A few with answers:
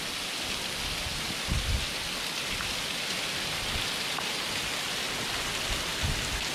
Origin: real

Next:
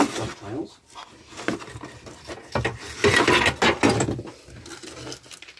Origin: real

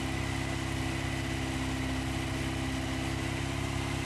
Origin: real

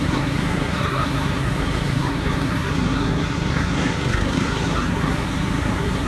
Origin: fake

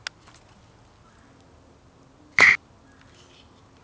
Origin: real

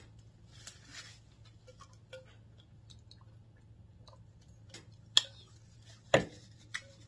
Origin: real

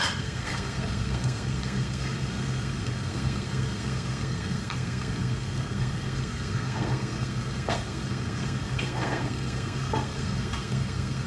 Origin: fake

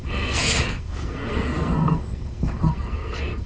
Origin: fake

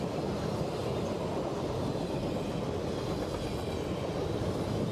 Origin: real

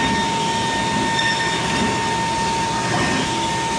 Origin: real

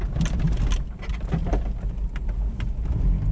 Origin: real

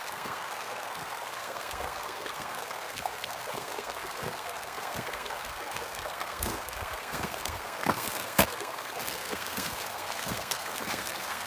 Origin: fake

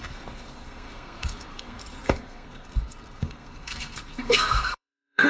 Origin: fake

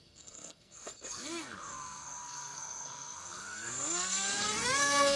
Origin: fake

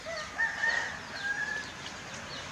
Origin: real